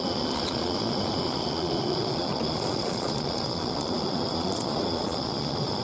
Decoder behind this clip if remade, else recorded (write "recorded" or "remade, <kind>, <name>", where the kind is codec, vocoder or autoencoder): remade, vocoder, Vocos